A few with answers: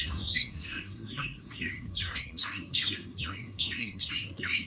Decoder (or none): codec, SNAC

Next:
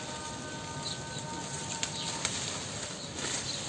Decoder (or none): none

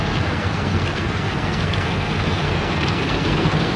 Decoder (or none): codec, SNAC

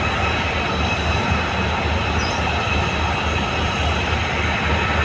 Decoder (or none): none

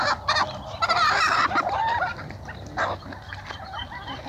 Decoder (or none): none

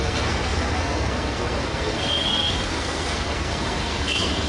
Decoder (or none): codec, SNAC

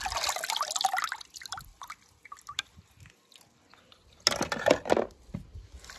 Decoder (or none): none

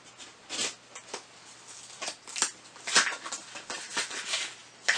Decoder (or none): none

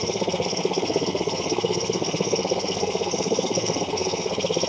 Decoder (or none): codec, SNAC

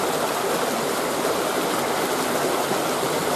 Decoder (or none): none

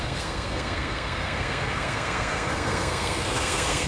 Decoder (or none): codec, SNAC